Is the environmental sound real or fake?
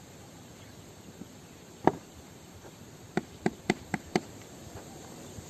fake